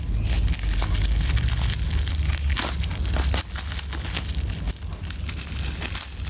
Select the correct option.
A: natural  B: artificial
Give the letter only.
A